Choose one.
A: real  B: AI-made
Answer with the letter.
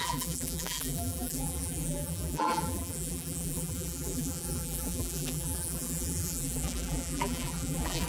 B